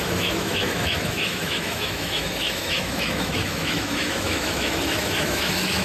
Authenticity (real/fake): fake